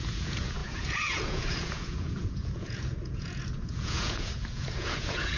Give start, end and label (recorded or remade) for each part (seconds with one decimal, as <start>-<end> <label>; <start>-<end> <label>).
0.0-5.4 remade